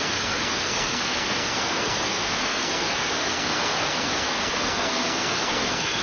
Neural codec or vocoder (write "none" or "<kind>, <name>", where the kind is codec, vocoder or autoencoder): codec, SNAC